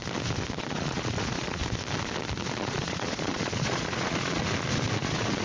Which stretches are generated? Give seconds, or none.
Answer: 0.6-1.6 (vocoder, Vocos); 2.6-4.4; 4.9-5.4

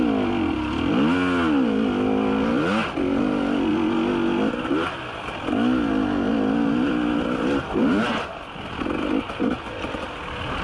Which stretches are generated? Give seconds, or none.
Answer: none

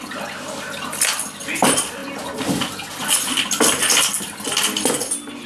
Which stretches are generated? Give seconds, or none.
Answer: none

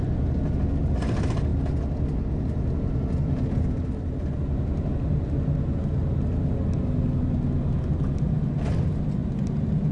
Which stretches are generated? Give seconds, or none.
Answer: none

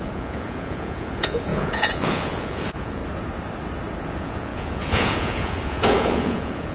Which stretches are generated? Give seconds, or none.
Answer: 0.0-3.0 (vocoder, Vocos); 4.0-6.7

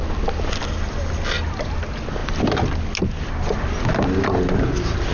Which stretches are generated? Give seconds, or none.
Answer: none

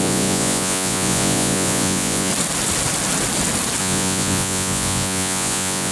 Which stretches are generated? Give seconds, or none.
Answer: 0.0-2.3 (vocoder, Vocos); 3.8-5.9